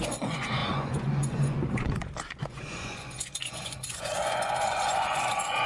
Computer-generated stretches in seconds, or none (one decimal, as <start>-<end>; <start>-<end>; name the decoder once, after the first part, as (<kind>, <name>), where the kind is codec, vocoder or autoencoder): 0.0-5.7 (vocoder, Vocos)